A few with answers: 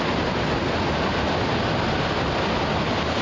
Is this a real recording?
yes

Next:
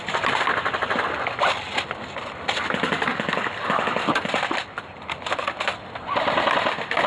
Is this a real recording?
yes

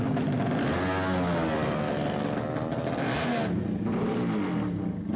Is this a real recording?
yes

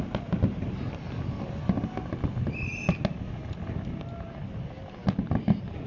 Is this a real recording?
yes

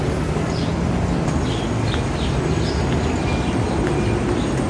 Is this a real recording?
yes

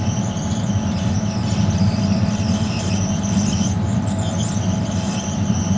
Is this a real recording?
yes